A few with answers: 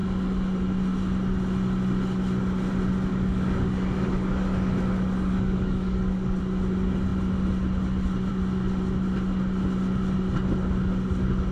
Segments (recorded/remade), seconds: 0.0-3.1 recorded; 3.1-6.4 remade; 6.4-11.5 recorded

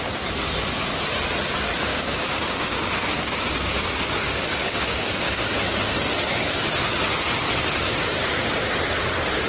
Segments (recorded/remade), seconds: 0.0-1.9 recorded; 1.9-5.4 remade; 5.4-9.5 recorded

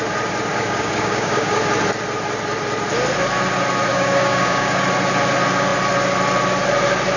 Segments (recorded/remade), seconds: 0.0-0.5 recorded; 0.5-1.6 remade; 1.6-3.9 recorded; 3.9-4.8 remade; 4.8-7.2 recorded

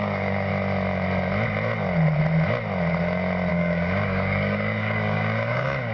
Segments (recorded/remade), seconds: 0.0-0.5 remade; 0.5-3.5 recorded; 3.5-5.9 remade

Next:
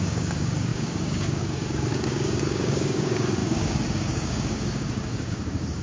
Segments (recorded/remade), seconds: 0.0-5.8 remade

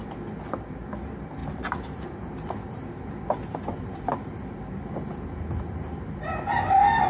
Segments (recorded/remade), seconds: 0.0-7.1 recorded

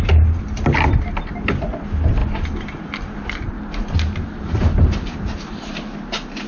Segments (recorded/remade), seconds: 0.0-6.5 recorded